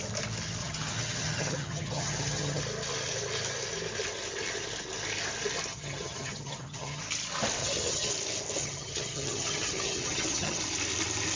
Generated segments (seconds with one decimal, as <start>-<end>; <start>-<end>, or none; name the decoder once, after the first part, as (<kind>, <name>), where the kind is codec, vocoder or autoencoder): 0.6-2.6 (vocoder, HiFi-GAN); 5.7-7.0; 7.6-8.1; 8.6-10.6